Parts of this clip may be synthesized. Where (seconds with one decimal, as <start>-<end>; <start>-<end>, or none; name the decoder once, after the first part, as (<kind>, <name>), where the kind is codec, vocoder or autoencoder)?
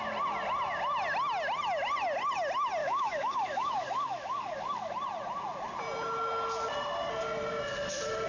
2.8-4.9 (codec, DAC)